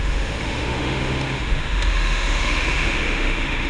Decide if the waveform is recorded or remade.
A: remade